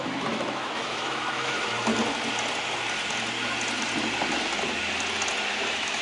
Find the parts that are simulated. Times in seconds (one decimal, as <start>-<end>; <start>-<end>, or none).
0.0-1.9; 5.5-6.0